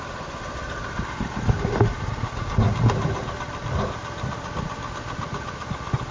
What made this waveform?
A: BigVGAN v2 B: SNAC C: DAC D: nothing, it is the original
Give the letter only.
D